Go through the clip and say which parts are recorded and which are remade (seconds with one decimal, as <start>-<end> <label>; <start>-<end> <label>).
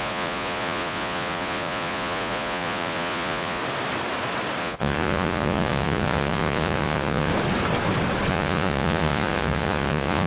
0.0-3.6 remade; 3.6-4.6 recorded; 4.6-7.3 remade; 7.3-8.3 recorded; 8.3-10.3 remade